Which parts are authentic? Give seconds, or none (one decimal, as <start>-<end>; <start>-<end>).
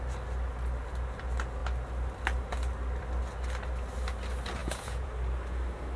0.0-4.6; 5.1-6.0